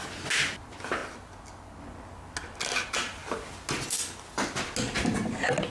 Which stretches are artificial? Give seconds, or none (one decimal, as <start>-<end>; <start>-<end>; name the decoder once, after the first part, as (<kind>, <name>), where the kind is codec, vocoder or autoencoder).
none